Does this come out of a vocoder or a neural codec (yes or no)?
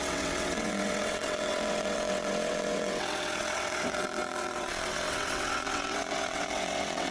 yes